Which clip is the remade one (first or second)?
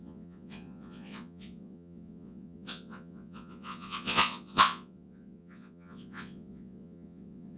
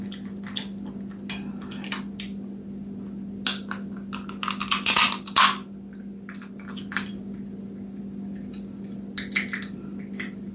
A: first